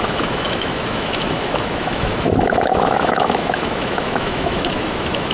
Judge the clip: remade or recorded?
remade